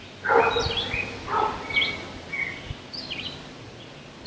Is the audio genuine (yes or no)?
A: yes